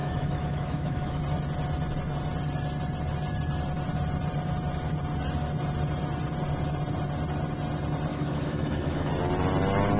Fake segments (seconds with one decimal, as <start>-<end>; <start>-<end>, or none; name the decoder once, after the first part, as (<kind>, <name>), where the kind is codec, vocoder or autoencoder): 0.0-1.2 (autoencoder, DAC-VAE); 8.1-9.1